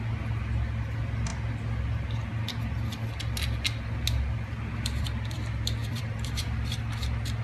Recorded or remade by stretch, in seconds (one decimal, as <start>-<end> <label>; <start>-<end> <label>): 0.0-5.8 recorded; 5.8-6.7 remade; 6.7-7.4 recorded

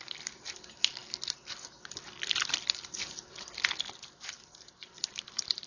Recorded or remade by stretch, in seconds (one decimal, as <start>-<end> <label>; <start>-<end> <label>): 0.0-1.0 remade; 1.0-3.9 recorded; 3.9-5.7 remade

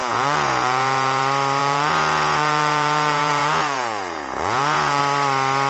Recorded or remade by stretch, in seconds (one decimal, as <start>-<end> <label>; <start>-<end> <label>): 0.0-1.2 remade; 1.2-1.6 recorded; 1.6-5.0 remade; 5.0-5.7 recorded

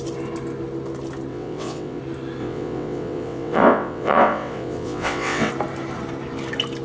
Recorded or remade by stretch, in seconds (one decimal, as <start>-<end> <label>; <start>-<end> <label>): 0.0-1.3 recorded; 1.3-2.0 remade; 2.0-2.4 recorded; 2.4-5.5 remade; 5.5-6.8 recorded

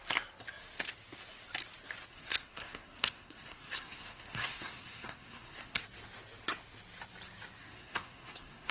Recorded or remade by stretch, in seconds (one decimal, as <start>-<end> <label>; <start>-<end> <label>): 0.0-2.1 recorded; 2.1-5.8 remade; 5.8-7.6 recorded; 7.6-8.7 remade

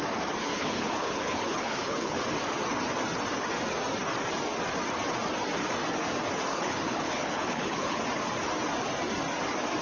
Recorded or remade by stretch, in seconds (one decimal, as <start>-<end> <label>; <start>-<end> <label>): 0.0-0.4 recorded; 0.4-2.2 remade; 2.2-6.5 recorded; 6.5-8.0 remade; 8.0-9.8 recorded

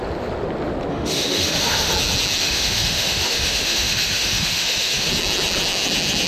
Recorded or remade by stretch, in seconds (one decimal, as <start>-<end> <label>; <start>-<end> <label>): 0.0-0.9 recorded; 0.9-1.9 remade; 1.9-2.4 recorded; 2.4-5.1 remade; 5.1-6.3 recorded

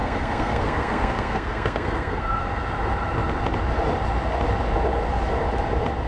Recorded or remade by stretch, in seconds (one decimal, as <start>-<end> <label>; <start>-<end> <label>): 0.0-2.4 remade; 2.4-6.1 recorded